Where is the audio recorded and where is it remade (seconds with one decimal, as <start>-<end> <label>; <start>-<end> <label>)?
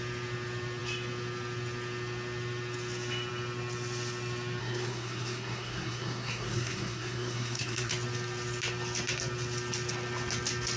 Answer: 0.0-4.6 recorded; 4.6-7.9 remade; 7.9-10.8 recorded